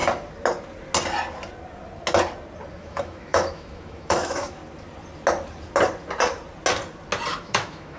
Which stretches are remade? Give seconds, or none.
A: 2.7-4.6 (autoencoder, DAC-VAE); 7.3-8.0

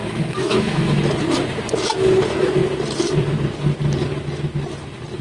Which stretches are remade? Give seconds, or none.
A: 0.0-1.0 (autoencoder, DAC-VAE)

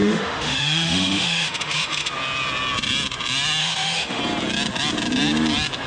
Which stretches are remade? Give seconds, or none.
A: 0.0-2.1 (autoencoder, DAC-VAE); 3.6-4.2

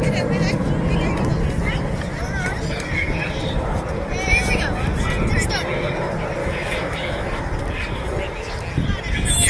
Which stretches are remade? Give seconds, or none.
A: 6.4-7.4 (autoencoder, DAC-VAE)

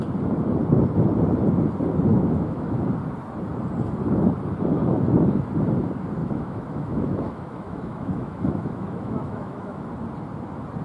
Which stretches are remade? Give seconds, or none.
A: 2.1-2.8 (autoencoder, DAC-VAE); 6.2-9.9

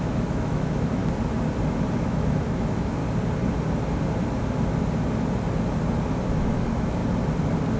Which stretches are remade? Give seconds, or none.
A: 0.0-1.0 (autoencoder, DAC-VAE); 2.0-3.0; 6.4-7.0

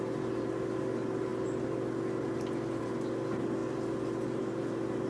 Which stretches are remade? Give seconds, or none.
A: none